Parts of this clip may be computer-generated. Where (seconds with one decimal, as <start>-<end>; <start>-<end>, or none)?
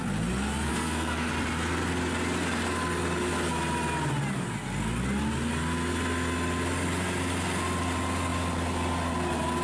0.7-1.3